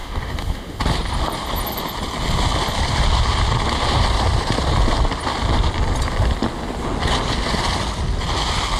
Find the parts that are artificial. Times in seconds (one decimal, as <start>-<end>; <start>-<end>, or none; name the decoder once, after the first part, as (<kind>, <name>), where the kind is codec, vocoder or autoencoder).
0.0-0.8 (autoencoder, DAC-VAE)